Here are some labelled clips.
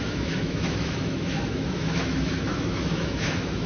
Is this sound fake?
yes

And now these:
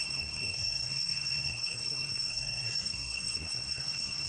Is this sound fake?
yes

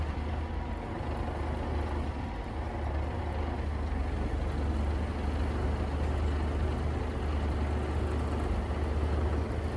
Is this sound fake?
no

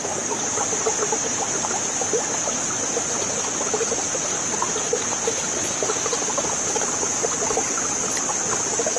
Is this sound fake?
no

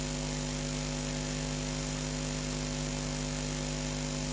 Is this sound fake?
no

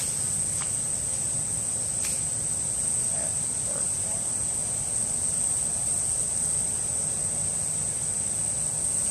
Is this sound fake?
no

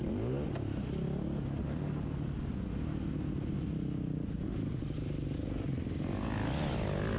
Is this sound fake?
no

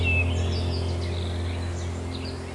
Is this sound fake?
no